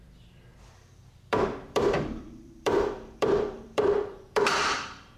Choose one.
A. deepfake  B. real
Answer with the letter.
A